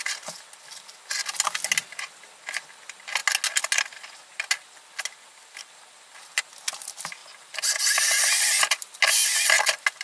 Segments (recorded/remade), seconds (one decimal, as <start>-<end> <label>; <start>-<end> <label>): 0.0-10.0 recorded